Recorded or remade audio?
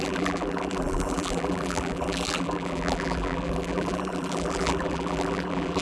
remade